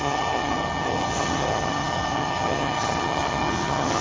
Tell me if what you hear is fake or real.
fake